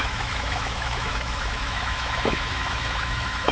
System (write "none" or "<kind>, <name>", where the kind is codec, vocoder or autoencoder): autoencoder, DAC-VAE